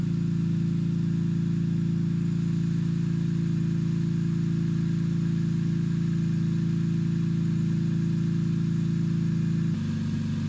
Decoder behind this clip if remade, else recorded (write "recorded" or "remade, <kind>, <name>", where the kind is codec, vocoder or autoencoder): recorded